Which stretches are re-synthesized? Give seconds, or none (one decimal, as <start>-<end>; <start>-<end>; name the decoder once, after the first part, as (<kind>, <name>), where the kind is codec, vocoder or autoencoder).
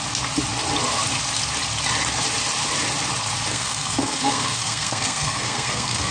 3.5-6.1 (codec, SNAC)